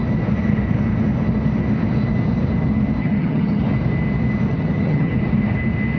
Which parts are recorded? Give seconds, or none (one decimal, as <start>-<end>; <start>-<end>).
0.0-3.0; 3.6-4.5; 5.1-6.0